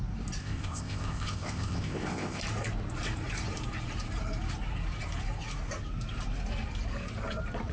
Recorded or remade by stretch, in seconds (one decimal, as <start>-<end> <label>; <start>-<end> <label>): 0.0-0.4 recorded; 0.4-2.4 remade; 2.4-7.7 recorded